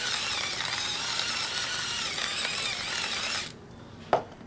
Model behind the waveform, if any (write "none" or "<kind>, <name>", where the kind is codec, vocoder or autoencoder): none